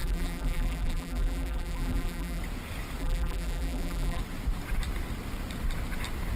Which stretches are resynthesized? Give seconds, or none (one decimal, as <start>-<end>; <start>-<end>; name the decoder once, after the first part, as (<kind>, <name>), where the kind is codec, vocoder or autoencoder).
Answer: 0.0-2.4 (vocoder, BigVGAN v2); 3.0-4.2